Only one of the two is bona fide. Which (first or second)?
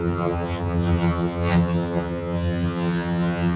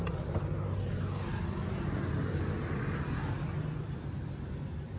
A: second